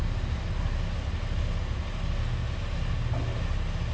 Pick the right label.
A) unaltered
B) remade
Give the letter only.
A